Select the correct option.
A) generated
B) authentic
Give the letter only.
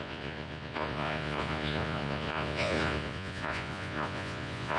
A